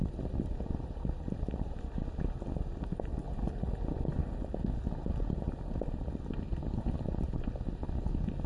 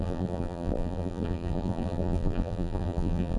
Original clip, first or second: first